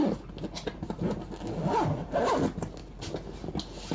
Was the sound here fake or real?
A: real